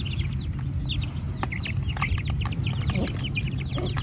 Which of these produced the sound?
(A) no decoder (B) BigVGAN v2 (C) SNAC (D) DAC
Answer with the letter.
A